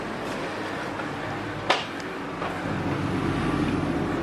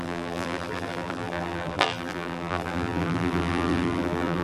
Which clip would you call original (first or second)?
first